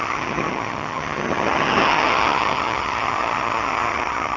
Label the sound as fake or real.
fake